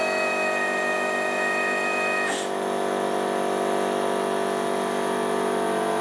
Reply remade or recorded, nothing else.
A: recorded